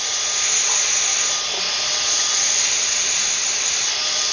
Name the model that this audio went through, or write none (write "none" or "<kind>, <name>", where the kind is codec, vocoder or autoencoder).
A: none